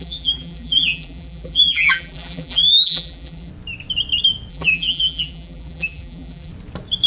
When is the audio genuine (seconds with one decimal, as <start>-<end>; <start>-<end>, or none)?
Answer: 3.5-4.5; 6.5-7.1